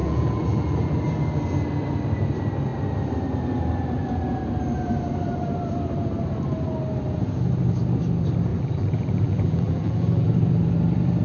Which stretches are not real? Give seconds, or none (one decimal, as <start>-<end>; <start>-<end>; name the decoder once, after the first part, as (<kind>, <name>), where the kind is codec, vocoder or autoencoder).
0.0-1.1 (vocoder, BigVGAN v2); 8.5-10.6